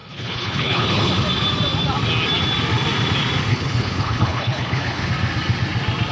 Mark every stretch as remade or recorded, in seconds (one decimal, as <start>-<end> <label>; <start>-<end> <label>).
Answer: 0.0-1.1 remade; 1.1-3.5 recorded; 3.5-5.1 remade; 5.1-6.1 recorded